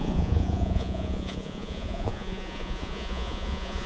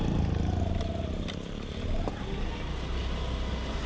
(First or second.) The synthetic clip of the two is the first